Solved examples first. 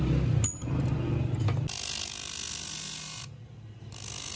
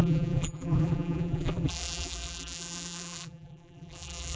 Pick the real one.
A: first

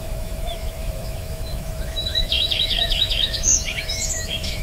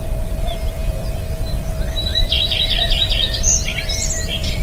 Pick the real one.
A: second